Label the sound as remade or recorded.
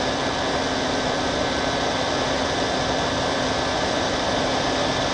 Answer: recorded